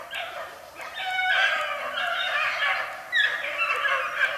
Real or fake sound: real